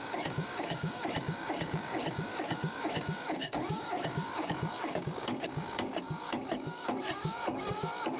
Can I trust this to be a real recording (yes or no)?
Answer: no